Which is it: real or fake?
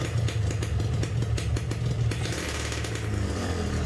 real